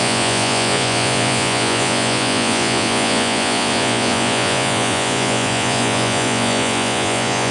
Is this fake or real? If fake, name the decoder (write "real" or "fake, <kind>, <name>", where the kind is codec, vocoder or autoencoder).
fake, vocoder, Vocos